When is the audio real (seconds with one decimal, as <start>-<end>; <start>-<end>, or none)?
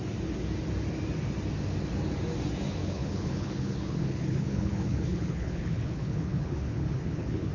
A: 0.0-2.8